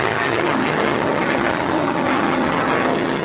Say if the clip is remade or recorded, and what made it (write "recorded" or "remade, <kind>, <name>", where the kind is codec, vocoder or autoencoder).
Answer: remade, vocoder, HiFi-GAN